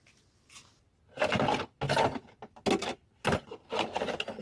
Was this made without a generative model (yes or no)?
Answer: yes